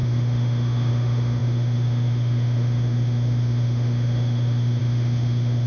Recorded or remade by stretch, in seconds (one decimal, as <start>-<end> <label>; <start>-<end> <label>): 0.0-5.7 remade